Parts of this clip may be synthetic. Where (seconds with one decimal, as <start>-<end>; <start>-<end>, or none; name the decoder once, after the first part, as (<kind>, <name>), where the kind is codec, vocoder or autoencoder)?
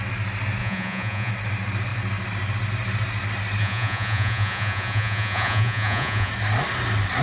0.6-1.3 (vocoder, Vocos); 3.6-6.3